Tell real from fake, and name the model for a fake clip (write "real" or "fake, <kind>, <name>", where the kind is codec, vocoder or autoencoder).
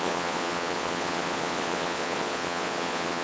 fake, vocoder, Vocos